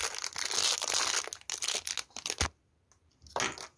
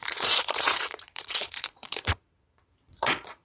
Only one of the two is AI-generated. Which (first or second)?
second